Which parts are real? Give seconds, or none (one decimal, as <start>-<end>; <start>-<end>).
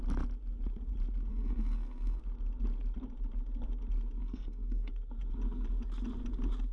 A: 0.0-1.3; 2.2-4.2; 4.9-6.7